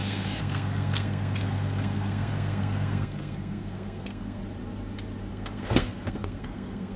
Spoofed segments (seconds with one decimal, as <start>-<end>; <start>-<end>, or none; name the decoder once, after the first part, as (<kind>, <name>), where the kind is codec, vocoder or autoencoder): 0.0-4.4 (codec, SNAC); 5.3-7.0